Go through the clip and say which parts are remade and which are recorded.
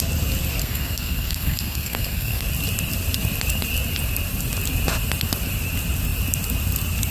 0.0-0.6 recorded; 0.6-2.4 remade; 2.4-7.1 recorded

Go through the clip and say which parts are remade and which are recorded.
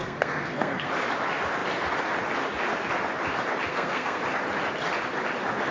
0.0-0.9 remade; 0.9-3.7 recorded; 3.7-4.2 remade; 4.2-5.7 recorded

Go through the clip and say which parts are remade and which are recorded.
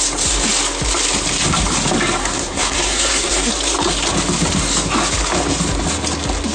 0.0-2.2 recorded; 2.2-3.5 remade; 3.5-6.5 recorded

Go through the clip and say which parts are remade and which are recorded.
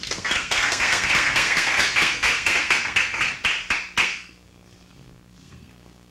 0.0-3.3 remade; 3.3-4.0 recorded; 4.0-6.1 remade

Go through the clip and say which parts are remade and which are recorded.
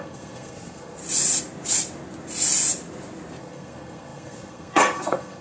0.0-1.0 remade; 1.0-3.4 recorded; 3.4-5.4 remade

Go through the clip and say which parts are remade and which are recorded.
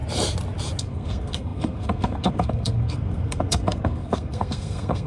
0.0-0.8 recorded; 0.8-5.1 remade